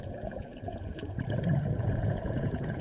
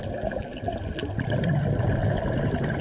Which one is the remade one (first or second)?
first